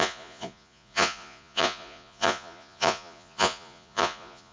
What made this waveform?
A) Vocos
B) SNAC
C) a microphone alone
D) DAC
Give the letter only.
A